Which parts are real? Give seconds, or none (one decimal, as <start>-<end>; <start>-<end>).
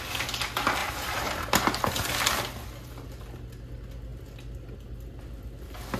0.0-0.8; 1.9-6.0